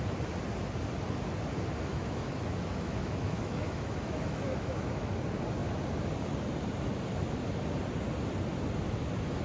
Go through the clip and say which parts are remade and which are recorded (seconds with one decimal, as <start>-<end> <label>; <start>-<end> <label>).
0.0-1.9 recorded; 1.9-5.1 remade; 5.1-9.4 recorded